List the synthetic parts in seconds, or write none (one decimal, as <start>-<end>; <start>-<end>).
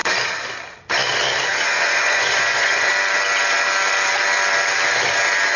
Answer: 1.5-2.9